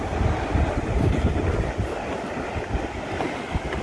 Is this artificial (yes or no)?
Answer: no